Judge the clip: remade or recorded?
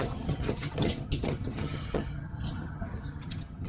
remade